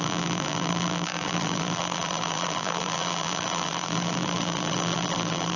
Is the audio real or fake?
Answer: fake